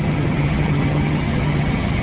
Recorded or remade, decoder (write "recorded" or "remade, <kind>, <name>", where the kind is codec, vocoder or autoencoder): remade, vocoder, HiFi-GAN